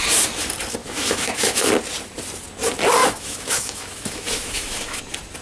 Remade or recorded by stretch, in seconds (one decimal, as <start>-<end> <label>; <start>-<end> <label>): 0.0-0.8 recorded; 0.8-1.7 remade; 1.7-3.0 recorded; 3.0-5.0 remade; 5.0-5.4 recorded